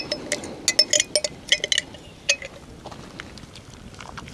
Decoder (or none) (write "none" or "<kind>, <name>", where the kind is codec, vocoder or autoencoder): none